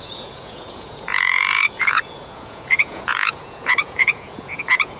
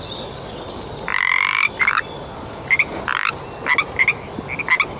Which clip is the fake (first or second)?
first